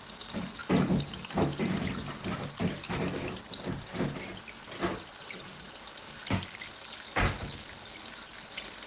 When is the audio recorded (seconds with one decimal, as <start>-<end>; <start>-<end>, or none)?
0.0-8.9